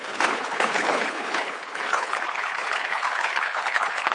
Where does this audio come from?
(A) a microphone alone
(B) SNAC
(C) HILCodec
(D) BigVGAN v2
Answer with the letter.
C